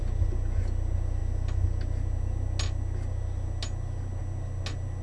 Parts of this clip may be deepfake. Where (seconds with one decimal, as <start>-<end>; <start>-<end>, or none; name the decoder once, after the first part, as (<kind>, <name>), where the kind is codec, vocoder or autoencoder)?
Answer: none